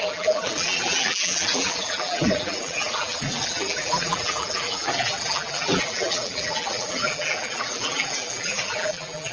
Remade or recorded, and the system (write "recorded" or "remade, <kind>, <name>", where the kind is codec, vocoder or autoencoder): remade, vocoder, BigVGAN v2